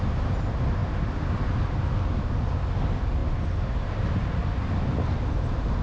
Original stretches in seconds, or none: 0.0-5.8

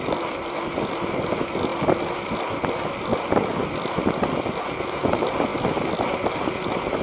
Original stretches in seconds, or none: 0.0-7.0

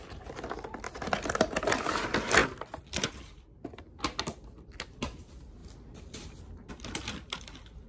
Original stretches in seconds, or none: 0.0-7.9

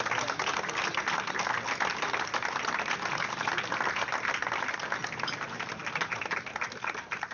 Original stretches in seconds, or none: 0.0-7.3

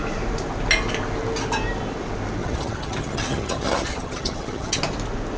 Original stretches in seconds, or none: 0.0-2.4; 4.8-5.4